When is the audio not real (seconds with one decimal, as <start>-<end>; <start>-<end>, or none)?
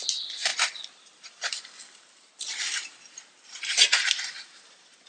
none